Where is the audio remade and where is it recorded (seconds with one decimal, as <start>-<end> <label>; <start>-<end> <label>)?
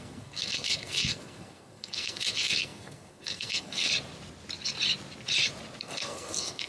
0.0-3.9 remade; 3.9-5.8 recorded; 5.8-6.7 remade